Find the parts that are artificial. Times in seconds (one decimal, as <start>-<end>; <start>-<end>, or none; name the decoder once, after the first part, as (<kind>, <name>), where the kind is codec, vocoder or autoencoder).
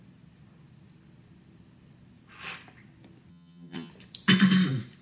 3.3-3.9 (vocoder, HiFi-GAN)